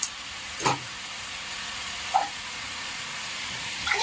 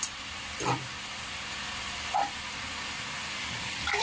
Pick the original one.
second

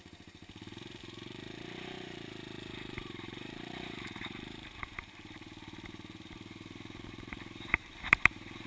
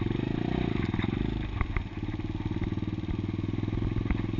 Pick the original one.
second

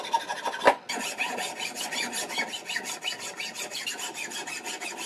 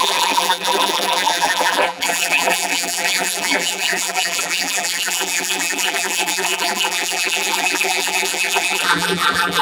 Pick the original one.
first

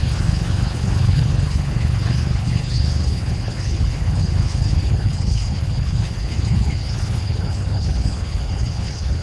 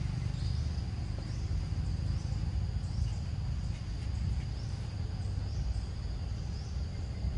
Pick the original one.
second